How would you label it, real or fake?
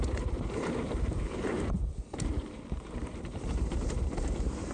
fake